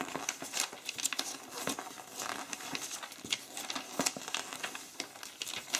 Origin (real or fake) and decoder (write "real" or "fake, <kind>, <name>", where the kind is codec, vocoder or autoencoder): real